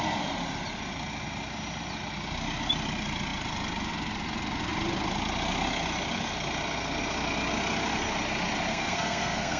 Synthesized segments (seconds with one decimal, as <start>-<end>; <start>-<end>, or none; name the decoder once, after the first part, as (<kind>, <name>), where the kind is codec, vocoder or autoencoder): 8.7-9.6 (codec, SNAC)

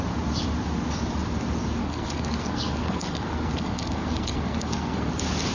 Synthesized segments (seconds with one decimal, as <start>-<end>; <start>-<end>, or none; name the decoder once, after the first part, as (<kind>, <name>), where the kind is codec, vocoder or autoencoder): 1.8-5.1 (codec, SNAC)

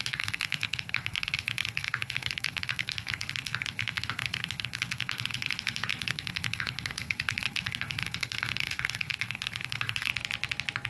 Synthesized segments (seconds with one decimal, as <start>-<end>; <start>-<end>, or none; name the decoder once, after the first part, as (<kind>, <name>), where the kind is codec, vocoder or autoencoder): 0.0-10.1 (codec, SNAC)

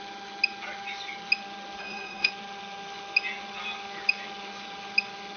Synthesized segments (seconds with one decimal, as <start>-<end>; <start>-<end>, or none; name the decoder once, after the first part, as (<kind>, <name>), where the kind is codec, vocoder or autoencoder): 1.8-2.3 (codec, SNAC)

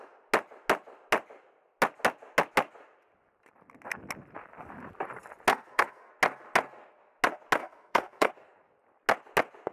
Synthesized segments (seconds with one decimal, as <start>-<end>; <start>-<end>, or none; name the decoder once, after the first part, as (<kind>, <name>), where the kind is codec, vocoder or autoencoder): 5.5-6.1 (codec, SNAC); 7.6-8.3

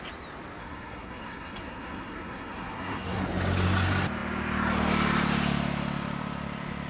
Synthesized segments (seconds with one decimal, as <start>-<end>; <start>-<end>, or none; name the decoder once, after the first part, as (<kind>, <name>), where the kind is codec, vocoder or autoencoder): 0.6-3.2 (codec, SNAC)

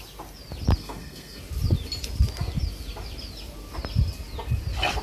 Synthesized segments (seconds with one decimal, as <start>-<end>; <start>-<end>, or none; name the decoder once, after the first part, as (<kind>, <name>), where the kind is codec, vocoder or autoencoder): 0.8-1.4 (codec, SNAC)

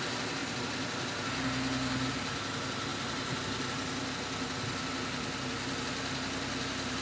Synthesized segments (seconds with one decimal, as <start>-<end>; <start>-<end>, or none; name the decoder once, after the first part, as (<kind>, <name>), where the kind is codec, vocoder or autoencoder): none